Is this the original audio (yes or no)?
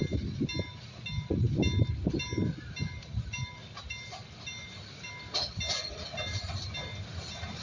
yes